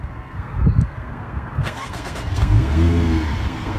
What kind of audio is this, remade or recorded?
remade